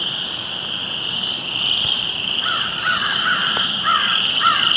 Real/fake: real